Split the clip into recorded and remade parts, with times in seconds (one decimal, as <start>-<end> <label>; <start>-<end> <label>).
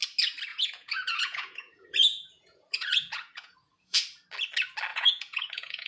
0.0-0.5 recorded; 0.5-4.0 remade; 4.0-4.9 recorded; 4.9-5.9 remade